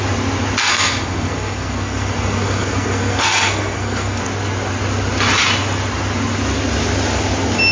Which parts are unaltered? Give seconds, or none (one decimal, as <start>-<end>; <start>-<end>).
0.0-0.6; 4.2-7.7